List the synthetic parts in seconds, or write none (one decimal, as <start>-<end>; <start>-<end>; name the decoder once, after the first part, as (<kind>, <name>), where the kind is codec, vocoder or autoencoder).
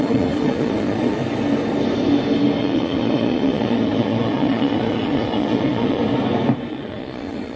0.0-1.2 (vocoder, Vocos); 2.6-6.0; 6.7-7.6